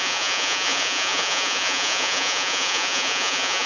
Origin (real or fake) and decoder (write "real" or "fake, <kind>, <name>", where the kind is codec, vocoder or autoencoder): fake, vocoder, Vocos